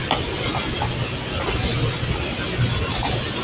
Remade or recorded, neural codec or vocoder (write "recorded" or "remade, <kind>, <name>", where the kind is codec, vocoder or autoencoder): recorded